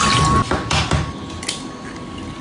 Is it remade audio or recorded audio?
recorded